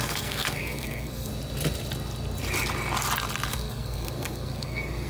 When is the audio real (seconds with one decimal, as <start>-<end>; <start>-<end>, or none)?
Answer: 1.3-3.5